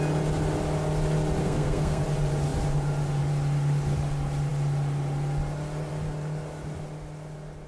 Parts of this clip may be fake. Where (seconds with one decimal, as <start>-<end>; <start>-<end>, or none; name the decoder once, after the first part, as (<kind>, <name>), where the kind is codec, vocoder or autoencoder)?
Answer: 1.4-2.0 (codec, SNAC)